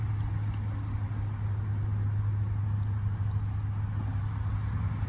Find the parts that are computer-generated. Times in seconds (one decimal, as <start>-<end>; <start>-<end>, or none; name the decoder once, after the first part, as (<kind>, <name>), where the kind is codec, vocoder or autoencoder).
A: none